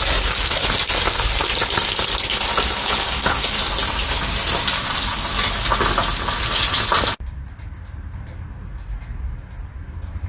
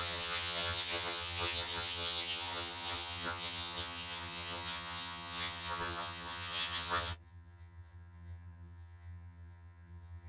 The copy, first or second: second